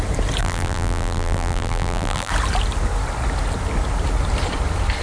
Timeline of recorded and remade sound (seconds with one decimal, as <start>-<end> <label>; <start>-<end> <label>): 0.0-0.4 recorded; 0.4-2.3 remade; 2.3-5.0 recorded